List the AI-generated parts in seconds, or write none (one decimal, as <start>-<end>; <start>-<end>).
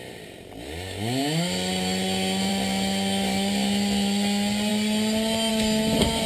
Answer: none